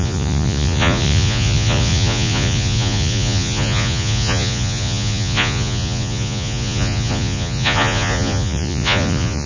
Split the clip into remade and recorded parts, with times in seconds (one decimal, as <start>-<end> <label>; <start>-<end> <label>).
0.0-9.5 remade